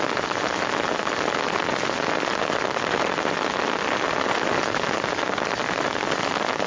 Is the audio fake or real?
real